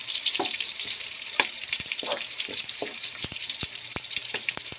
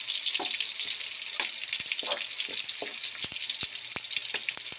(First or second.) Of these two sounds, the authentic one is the second